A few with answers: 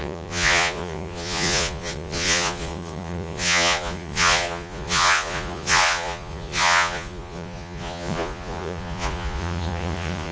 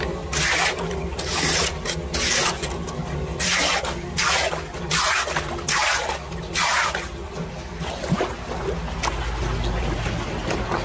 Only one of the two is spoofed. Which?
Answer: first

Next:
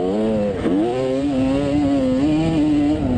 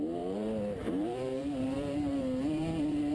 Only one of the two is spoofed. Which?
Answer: second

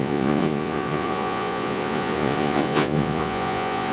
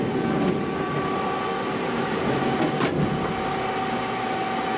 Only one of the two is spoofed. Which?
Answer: first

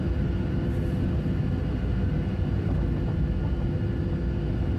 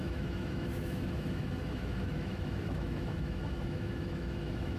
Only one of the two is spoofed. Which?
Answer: second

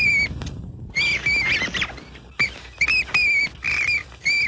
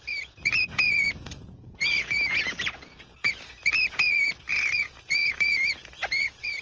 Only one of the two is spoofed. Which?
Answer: second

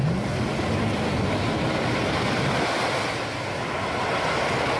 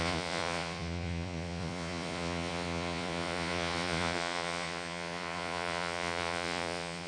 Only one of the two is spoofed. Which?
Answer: second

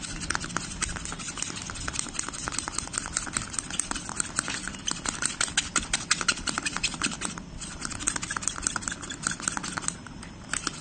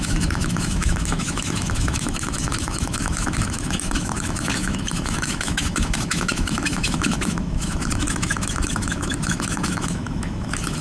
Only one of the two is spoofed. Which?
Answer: second